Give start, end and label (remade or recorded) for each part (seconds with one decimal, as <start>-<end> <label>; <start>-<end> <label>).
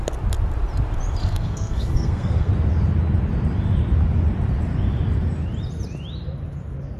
0.0-1.2 recorded; 1.2-2.5 remade; 2.5-7.0 recorded